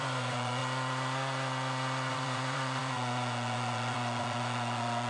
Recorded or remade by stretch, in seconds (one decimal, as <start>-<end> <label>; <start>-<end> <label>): 0.0-0.6 remade; 0.6-2.1 recorded; 2.1-5.1 remade